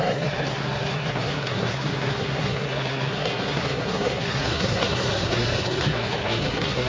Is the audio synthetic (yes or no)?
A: yes